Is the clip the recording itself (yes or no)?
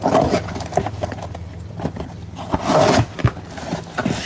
yes